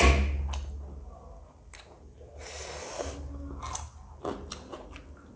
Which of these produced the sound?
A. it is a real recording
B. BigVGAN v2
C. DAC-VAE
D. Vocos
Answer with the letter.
A